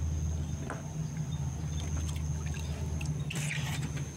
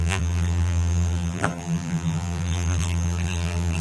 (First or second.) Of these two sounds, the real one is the first